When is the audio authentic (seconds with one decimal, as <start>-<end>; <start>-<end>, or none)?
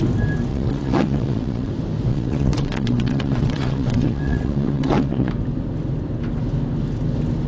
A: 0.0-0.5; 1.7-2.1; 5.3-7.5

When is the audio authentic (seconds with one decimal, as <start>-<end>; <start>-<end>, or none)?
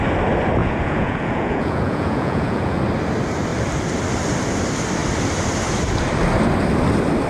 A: 0.0-0.6; 2.8-7.3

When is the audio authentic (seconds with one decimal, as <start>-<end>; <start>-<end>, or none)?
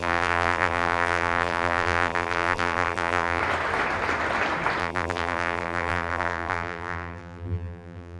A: 3.4-4.8